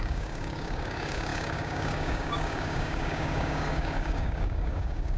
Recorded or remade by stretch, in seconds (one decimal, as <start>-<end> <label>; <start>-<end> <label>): 0.0-5.2 remade